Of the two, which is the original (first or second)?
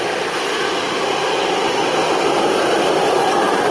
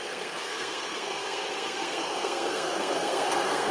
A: first